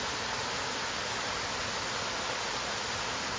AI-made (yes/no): no